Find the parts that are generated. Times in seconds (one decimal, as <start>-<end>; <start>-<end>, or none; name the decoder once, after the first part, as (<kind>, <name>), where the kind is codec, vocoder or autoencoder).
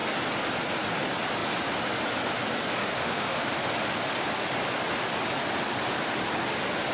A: 2.8-3.5 (autoencoder, DAC-VAE)